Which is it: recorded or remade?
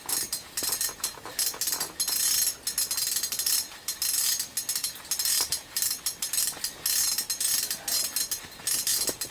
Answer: recorded